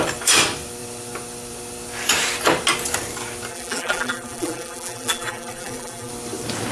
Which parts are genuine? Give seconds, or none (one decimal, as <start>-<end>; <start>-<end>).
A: 0.0-3.5; 6.1-6.7

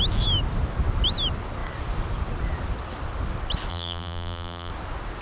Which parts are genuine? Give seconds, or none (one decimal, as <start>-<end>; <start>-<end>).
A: 0.0-3.7; 4.7-5.2

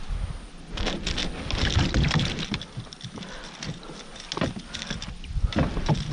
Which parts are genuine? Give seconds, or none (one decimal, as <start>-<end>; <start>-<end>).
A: 0.0-6.1

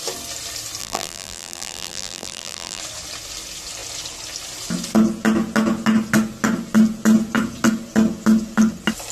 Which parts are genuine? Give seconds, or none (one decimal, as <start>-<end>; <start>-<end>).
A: 0.0-0.8; 2.8-9.1

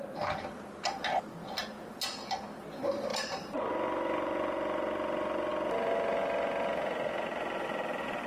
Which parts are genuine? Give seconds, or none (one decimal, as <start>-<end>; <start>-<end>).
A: 0.0-3.1; 3.7-8.3

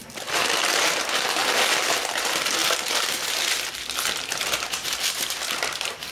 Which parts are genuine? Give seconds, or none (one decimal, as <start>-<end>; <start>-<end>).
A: 1.0-2.6; 4.3-6.1

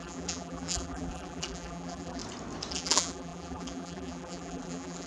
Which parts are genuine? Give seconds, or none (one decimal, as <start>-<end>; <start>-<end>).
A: 2.2-2.7